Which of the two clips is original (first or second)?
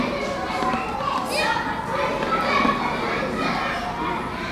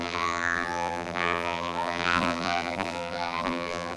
first